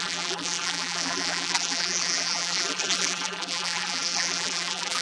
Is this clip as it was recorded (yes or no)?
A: no